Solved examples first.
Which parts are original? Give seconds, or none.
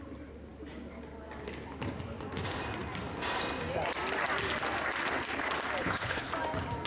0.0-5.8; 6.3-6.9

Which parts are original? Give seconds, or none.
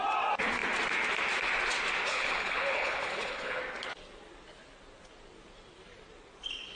0.0-2.1; 3.6-6.7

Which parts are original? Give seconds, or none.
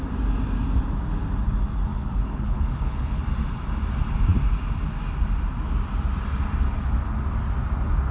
0.0-1.9; 3.2-8.1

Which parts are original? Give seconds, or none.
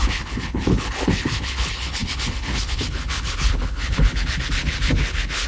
none